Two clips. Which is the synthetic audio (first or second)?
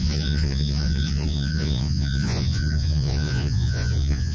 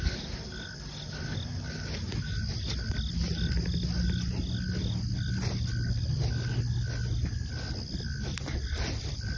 first